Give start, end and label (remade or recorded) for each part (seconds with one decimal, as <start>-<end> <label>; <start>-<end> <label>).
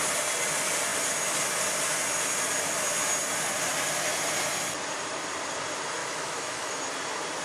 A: 0.0-6.0 recorded; 6.0-6.8 remade; 6.8-7.4 recorded